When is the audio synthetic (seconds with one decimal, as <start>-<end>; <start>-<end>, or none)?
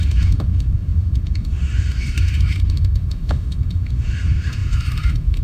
0.0-5.4